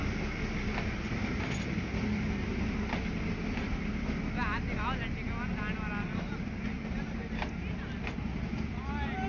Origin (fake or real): real